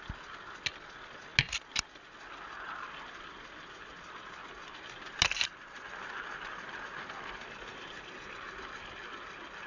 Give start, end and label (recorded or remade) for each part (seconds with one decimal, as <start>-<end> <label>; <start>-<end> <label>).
0.0-9.7 recorded